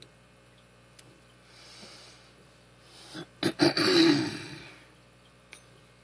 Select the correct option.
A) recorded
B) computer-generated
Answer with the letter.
A